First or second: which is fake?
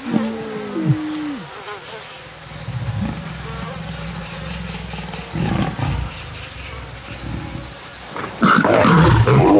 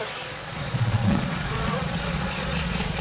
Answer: second